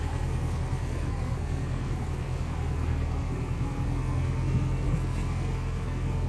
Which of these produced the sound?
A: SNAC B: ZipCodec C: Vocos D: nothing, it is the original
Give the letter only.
A